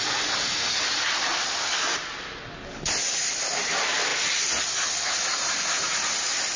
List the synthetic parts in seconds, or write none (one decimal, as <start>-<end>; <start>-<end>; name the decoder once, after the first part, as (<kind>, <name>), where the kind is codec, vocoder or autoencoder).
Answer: none